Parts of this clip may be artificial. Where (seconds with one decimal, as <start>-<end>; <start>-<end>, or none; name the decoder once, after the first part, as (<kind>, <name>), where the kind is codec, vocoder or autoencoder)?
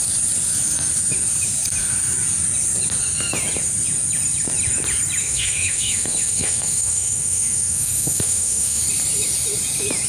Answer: 5.2-8.8 (autoencoder, DAC-VAE)